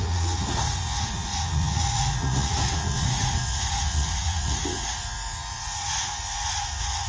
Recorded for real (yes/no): no